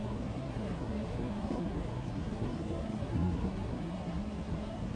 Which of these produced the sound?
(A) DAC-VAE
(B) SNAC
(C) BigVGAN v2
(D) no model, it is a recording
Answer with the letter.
B